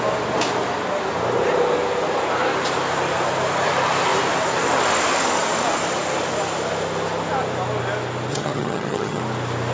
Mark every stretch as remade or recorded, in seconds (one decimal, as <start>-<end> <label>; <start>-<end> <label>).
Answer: 0.0-8.3 recorded; 8.3-9.2 remade; 9.2-9.7 recorded